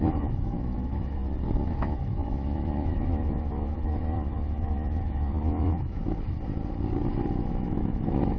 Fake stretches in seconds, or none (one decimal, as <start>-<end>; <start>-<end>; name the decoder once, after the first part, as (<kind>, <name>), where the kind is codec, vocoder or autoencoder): 0.0-1.2 (autoencoder, DAC-VAE); 1.7-6.0; 7.5-8.4